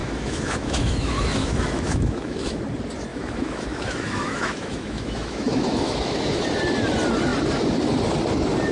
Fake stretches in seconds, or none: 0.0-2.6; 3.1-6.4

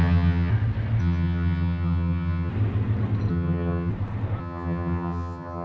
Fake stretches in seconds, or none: 0.0-0.5; 1.0-2.5; 3.3-3.9; 4.4-5.6

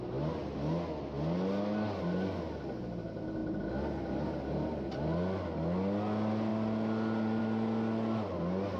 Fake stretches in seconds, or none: none

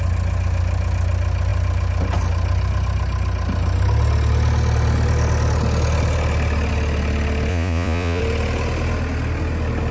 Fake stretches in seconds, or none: 7.5-8.2

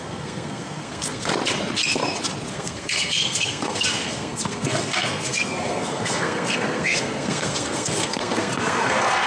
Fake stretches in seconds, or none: 0.0-1.3; 2.5-9.3